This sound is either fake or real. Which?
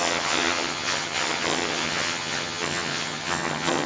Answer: fake